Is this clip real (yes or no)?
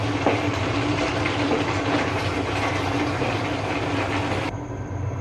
yes